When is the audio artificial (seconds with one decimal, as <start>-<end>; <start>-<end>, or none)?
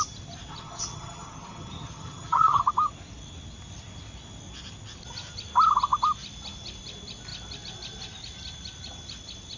0.5-2.6